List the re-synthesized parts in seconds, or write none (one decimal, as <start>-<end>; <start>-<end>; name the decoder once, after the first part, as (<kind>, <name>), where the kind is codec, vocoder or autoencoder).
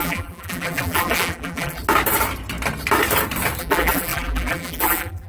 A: 0.0-1.8 (vocoder, BigVGAN v2); 3.6-5.3